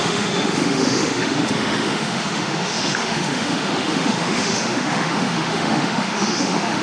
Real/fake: fake